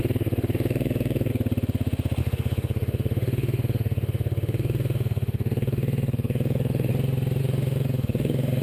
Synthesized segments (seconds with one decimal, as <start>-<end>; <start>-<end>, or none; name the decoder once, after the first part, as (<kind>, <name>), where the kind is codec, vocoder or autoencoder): 0.0-1.3 (autoencoder, DAC-VAE); 2.2-6.9; 7.4-8.6